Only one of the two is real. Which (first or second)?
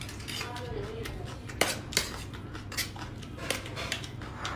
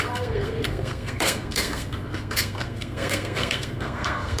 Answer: first